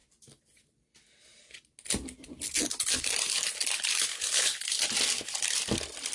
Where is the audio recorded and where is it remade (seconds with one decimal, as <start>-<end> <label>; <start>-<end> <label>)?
0.0-4.1 recorded; 4.1-4.8 remade; 4.8-6.1 recorded